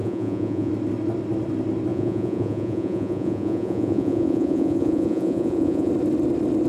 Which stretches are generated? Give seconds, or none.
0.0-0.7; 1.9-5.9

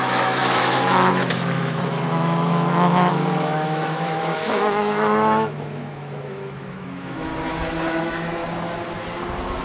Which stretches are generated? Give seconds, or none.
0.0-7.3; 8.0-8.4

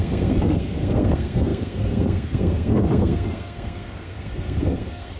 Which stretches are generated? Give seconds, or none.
0.0-5.2

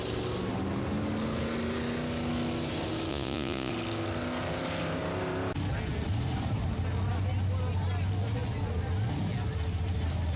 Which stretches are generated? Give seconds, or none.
3.1-3.7